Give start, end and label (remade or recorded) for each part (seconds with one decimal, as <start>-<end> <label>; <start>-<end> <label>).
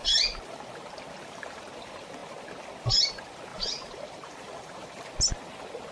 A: 0.0-3.5 recorded; 3.5-5.0 remade; 5.0-5.9 recorded